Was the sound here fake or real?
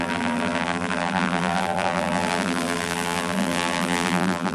fake